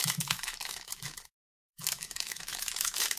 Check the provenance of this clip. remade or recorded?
remade